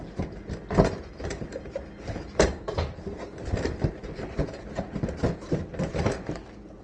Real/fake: real